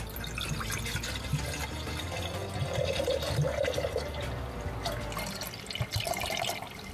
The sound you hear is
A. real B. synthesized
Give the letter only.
A